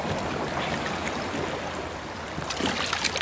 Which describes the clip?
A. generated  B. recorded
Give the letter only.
B